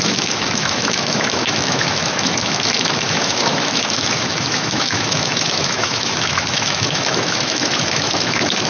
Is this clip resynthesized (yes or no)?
yes